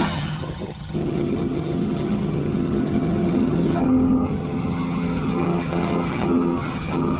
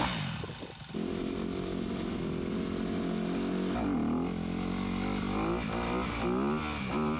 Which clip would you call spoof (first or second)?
first